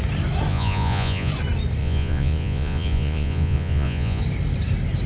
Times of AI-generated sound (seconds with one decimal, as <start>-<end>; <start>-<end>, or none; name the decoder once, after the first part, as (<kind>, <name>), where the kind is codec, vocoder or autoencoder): 0.5-1.3 (vocoder, Vocos); 1.8-4.2